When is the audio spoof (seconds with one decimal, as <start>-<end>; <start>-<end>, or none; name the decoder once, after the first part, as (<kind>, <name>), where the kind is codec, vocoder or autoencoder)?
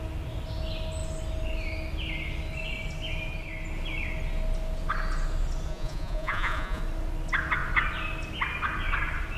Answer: 5.7-6.8 (vocoder, Vocos)